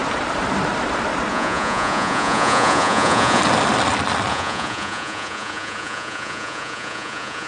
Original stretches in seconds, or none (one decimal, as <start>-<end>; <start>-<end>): 0.0-1.3; 3.4-4.3